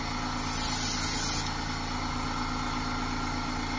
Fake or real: real